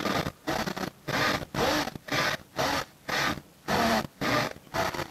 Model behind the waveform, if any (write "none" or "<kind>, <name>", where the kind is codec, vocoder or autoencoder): none